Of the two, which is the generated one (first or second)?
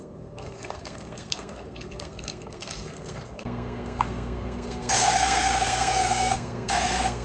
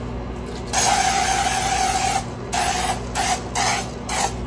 first